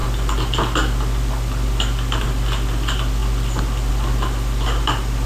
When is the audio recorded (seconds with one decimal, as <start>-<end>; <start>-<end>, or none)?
0.0-5.3